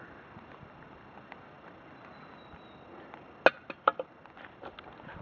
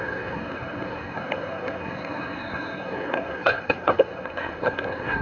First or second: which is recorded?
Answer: first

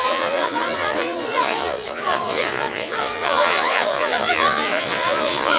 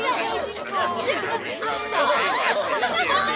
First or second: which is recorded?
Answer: second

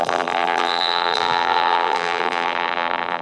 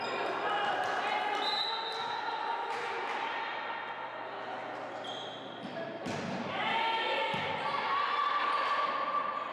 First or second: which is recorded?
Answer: second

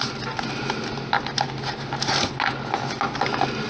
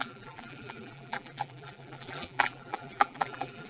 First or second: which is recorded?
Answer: first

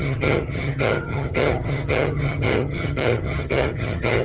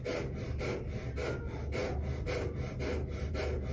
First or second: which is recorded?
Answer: second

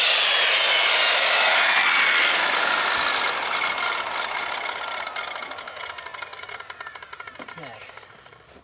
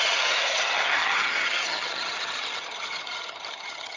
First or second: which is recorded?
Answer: first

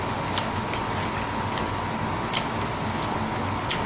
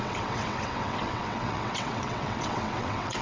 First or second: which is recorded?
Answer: first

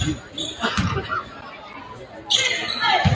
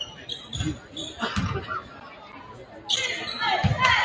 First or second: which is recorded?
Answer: second